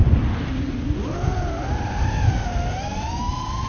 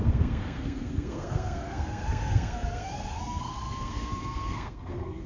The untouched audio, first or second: first